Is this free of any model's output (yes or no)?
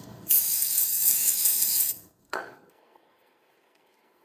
no